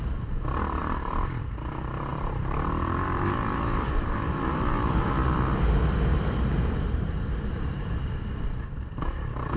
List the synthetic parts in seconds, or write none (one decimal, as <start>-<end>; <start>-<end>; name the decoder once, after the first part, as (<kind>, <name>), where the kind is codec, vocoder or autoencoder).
0.8-1.4 (vocoder, BigVGAN v2); 2.1-5.1; 6.1-8.0